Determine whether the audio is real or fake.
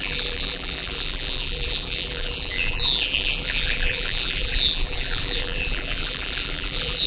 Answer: fake